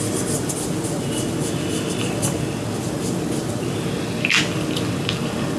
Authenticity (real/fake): real